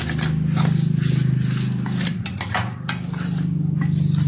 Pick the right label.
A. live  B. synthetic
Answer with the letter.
A